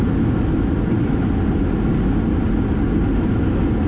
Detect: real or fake real